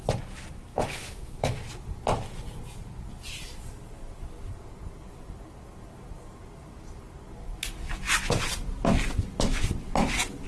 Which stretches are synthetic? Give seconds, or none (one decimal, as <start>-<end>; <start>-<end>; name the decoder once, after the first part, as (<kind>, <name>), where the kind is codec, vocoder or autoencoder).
0.7-1.6 (autoencoder, DAC-VAE)

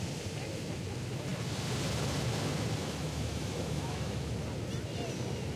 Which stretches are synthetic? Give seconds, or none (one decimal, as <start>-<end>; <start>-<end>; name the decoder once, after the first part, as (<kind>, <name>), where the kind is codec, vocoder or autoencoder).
2.8-4.3 (autoencoder, DAC-VAE)

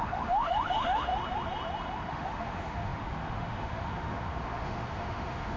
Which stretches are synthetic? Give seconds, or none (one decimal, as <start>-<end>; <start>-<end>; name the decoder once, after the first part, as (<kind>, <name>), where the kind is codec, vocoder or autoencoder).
0.0-1.1 (autoencoder, DAC-VAE); 2.1-5.6